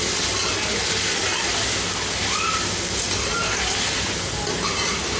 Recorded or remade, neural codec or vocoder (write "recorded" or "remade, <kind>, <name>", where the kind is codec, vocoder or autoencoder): recorded